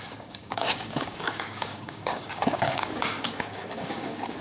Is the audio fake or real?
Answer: fake